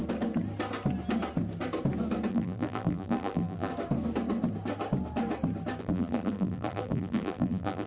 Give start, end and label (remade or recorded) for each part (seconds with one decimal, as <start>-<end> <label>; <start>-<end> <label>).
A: 0.0-2.3 recorded; 2.3-3.7 remade; 3.7-5.8 recorded; 5.8-7.9 remade